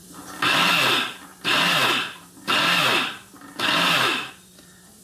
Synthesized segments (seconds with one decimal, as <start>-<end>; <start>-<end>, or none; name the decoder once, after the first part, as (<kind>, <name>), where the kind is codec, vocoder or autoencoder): none